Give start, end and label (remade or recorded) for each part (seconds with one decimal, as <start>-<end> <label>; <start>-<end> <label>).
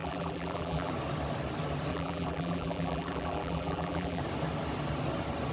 0.0-0.9 remade; 0.9-1.9 recorded; 1.9-4.2 remade; 4.2-5.5 recorded